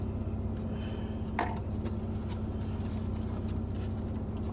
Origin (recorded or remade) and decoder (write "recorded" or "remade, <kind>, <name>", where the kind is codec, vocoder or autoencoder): recorded